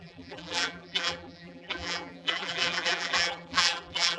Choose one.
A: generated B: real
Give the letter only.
A